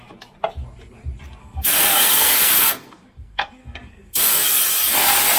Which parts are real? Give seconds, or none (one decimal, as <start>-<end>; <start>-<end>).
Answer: 0.0-1.4; 4.6-5.4